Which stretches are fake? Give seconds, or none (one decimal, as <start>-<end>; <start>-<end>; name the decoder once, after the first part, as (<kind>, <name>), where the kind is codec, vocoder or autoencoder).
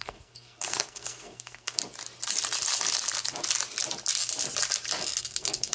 0.0-1.8 (codec, SNAC); 5.2-5.7